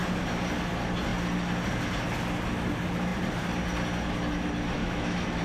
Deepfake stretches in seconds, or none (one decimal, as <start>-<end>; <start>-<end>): 4.8-5.4